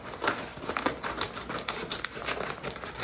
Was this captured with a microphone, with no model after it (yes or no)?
yes